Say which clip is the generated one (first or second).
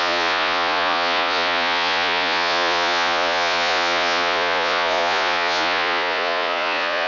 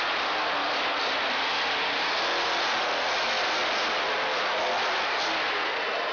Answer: first